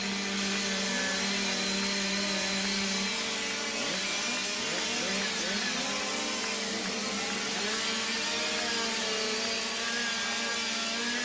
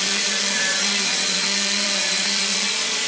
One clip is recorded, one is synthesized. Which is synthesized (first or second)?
second